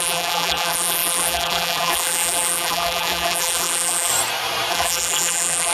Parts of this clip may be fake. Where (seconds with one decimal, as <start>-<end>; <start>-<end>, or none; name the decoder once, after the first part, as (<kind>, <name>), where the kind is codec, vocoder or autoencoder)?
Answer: 0.0-4.1 (vocoder, BigVGAN v2); 4.7-5.7